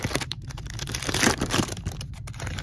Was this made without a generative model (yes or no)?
no